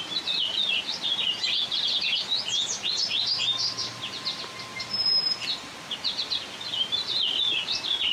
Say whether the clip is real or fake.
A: real